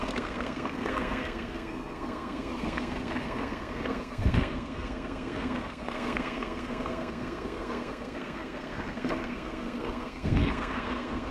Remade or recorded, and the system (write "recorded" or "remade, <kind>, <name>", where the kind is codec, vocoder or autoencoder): remade, codec, SNAC